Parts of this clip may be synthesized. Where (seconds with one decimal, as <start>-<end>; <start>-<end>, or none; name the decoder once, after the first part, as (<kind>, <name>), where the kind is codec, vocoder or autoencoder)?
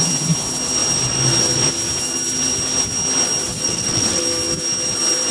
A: 3.6-4.2 (vocoder, WaveNeXt)